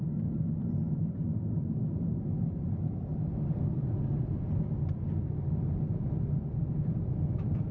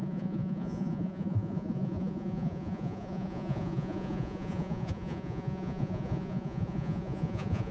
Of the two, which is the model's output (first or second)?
second